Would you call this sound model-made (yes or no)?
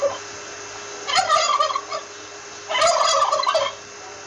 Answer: no